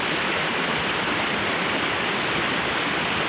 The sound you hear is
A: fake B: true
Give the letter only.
B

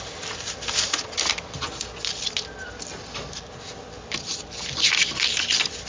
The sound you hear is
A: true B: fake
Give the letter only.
A